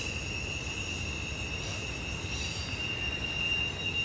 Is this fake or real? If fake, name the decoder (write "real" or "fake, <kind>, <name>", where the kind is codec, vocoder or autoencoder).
real